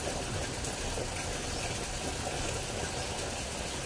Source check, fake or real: real